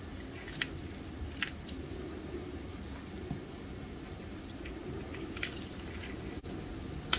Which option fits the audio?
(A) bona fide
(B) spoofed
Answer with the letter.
A